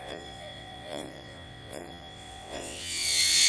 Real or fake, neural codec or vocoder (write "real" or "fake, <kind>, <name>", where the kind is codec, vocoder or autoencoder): fake, vocoder, WaveNeXt